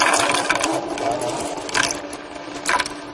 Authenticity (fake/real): real